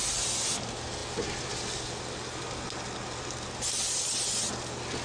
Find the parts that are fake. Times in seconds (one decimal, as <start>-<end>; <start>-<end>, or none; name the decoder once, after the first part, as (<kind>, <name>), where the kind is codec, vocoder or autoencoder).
none